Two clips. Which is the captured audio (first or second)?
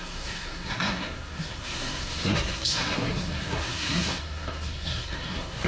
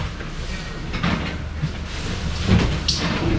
second